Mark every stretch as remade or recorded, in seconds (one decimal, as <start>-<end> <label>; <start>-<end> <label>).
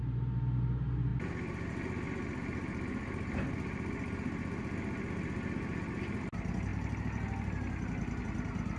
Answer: 0.0-8.8 recorded